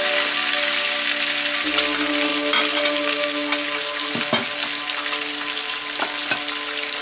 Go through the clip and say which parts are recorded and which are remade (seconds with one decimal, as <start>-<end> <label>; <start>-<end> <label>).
0.0-7.0 recorded